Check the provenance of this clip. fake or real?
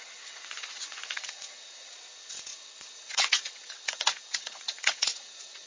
fake